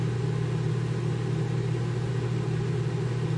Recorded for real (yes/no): yes